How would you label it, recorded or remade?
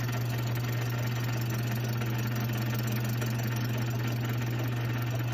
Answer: recorded